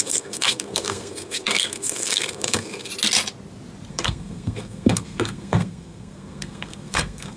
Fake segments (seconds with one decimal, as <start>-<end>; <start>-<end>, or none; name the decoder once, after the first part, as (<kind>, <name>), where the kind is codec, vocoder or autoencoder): 0.0-2.9 (codec, SNAC); 3.9-7.4